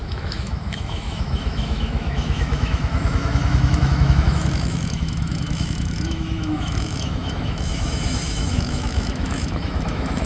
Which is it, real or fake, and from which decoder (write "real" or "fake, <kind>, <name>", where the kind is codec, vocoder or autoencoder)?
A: fake, autoencoder, DAC-VAE